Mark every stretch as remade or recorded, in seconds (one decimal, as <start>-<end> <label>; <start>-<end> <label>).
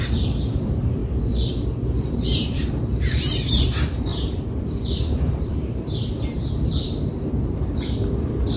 0.0-1.0 remade; 1.0-2.1 recorded; 2.1-8.6 remade